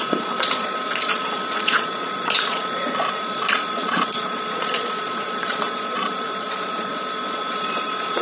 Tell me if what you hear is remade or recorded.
remade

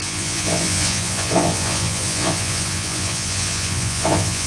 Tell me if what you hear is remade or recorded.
remade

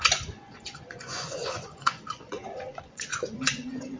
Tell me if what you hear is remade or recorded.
remade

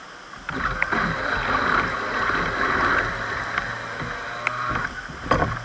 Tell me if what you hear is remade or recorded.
recorded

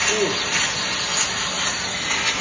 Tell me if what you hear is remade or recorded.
recorded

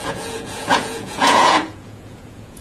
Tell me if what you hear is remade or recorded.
remade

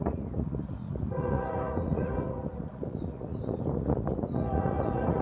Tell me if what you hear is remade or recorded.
remade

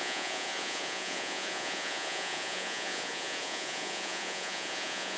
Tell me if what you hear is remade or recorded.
remade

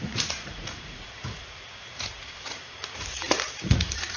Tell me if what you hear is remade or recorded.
remade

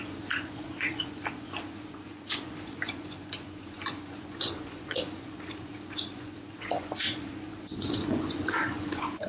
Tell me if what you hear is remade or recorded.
remade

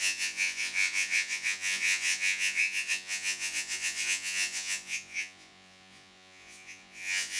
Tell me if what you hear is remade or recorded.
remade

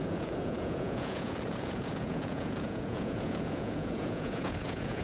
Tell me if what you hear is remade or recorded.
remade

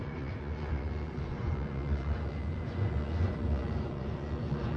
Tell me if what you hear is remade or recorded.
remade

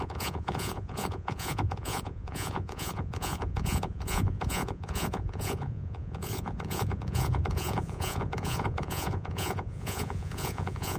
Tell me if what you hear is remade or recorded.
remade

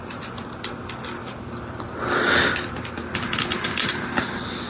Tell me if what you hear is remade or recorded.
recorded